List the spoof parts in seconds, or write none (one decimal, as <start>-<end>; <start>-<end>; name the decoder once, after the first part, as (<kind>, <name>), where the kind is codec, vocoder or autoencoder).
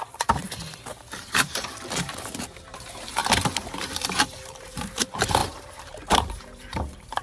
0.0-0.4 (vocoder, BigVGAN v2); 1.1-3.2; 3.7-7.2